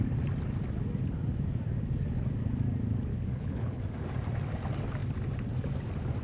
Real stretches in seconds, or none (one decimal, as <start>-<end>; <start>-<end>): 0.0-3.1; 3.8-6.2